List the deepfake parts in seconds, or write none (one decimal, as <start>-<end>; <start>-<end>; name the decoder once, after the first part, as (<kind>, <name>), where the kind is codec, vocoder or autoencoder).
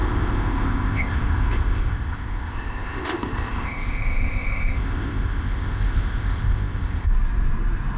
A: 0.0-7.1 (codec, ZipCodec)